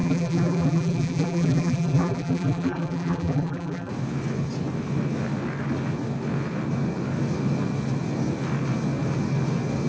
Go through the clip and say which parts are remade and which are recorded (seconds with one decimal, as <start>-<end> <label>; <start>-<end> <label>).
0.0-3.9 remade; 3.9-9.9 recorded